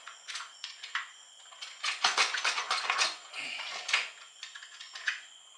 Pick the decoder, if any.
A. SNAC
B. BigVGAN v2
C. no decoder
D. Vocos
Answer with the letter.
D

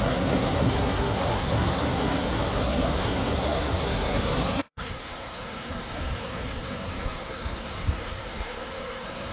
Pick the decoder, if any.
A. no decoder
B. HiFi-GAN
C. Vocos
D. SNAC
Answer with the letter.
D